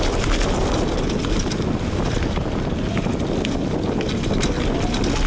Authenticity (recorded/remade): recorded